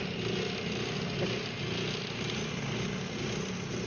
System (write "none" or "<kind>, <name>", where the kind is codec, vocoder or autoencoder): none